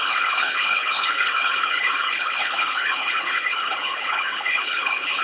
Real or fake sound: fake